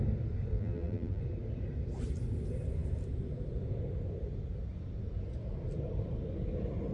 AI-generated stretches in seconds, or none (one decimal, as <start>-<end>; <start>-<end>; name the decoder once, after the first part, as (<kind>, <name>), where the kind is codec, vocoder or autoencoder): 0.5-1.2 (vocoder, BigVGAN v2)